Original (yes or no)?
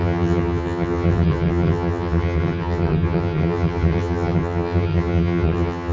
no